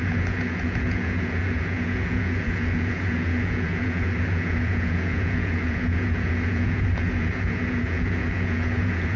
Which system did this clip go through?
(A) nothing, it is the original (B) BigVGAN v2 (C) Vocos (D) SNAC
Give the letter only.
C